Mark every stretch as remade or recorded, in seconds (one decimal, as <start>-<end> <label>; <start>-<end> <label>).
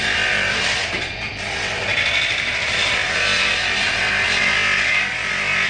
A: 0.0-5.7 recorded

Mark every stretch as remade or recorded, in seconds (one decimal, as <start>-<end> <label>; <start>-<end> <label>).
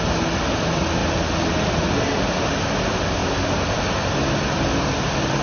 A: 0.0-5.4 recorded